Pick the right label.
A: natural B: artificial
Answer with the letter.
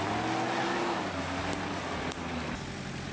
A